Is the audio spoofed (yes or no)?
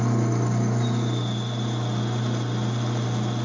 no